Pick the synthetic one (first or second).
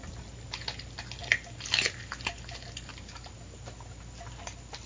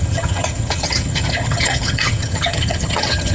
second